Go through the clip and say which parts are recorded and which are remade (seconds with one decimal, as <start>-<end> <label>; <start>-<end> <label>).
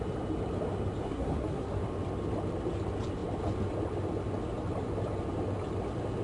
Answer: 0.0-1.0 recorded; 1.0-1.8 remade; 1.8-6.2 recorded